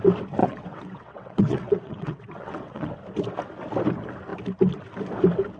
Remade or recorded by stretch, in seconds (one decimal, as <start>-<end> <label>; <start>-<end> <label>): 0.0-0.4 recorded; 0.4-2.9 remade; 2.9-5.6 recorded